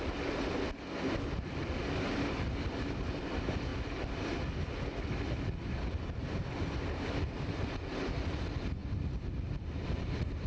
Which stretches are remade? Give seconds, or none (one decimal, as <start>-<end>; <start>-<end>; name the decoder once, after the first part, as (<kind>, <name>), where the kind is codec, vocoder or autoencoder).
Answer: none